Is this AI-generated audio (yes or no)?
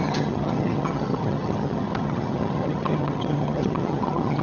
yes